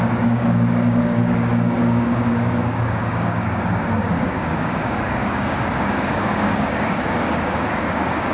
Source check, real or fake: fake